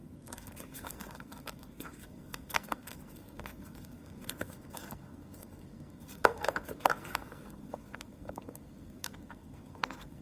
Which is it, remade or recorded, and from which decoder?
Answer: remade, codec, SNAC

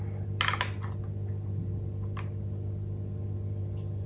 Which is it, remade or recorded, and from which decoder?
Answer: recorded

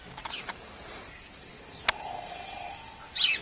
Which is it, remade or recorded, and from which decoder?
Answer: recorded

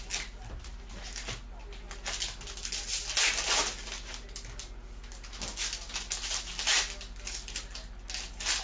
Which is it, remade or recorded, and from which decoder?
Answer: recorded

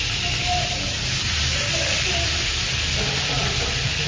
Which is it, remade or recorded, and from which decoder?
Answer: remade, vocoder, BigVGAN v2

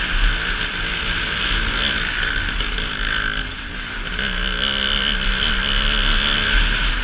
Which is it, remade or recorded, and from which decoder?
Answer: recorded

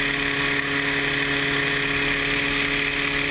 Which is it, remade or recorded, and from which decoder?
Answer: recorded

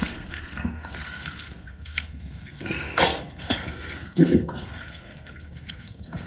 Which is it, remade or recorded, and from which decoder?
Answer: remade, codec, SNAC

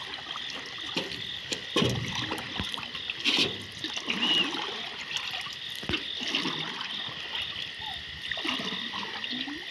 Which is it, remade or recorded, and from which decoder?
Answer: recorded